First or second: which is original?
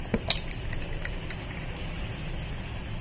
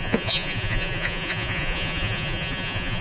first